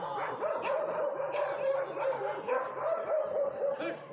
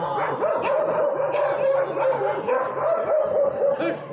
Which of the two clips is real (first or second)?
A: second